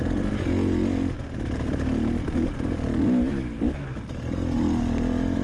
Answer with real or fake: real